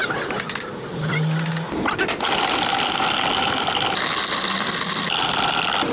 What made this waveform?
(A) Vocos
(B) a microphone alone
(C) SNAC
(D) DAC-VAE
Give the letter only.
B